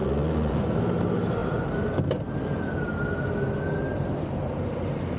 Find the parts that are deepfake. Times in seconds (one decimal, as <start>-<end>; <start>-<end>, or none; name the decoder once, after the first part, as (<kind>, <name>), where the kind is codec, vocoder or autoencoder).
0.0-0.7 (vocoder, Vocos)

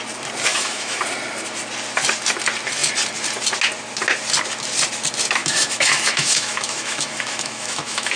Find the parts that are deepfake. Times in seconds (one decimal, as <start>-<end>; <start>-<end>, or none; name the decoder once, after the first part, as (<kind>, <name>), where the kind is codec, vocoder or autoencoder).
0.5-1.0 (autoencoder, DAC-VAE); 5.4-8.2

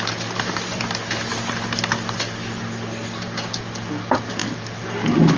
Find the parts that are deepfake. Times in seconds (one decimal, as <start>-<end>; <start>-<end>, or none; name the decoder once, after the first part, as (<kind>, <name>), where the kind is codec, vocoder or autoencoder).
none

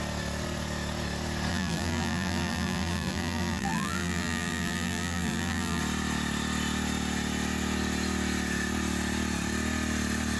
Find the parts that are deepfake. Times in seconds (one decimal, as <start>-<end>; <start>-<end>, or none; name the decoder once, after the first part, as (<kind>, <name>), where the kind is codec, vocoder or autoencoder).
1.5-5.8 (vocoder, BigVGAN v2)

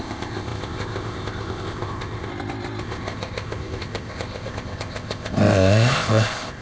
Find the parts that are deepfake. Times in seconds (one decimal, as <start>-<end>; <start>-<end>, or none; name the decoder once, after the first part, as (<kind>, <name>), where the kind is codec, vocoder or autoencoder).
0.0-2.3 (codec, ZipCodec); 2.8-6.6